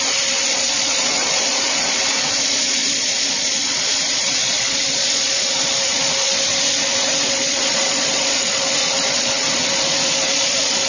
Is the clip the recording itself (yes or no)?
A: no